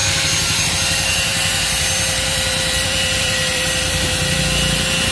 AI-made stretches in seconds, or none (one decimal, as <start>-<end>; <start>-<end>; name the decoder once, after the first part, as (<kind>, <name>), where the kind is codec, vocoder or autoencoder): 1.3-4.4 (vocoder, BigVGAN v2)